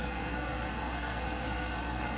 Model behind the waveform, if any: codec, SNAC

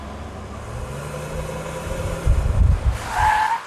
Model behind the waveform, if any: none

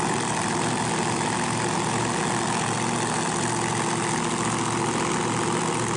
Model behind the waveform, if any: none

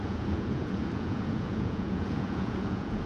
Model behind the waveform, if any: vocoder, Vocos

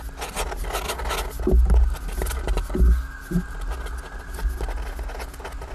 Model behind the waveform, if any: none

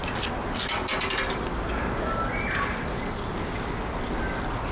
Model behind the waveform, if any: none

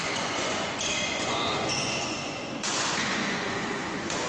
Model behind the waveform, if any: vocoder, Vocos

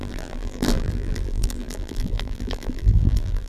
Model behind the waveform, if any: vocoder, BigVGAN v2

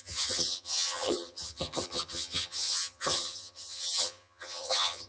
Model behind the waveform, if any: vocoder, HiFi-GAN